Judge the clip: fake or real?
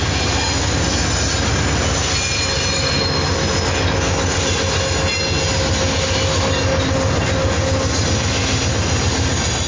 real